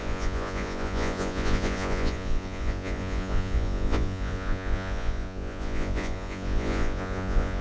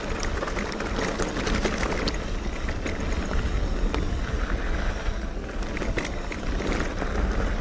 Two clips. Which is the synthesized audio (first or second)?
first